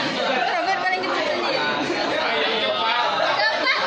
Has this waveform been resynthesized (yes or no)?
no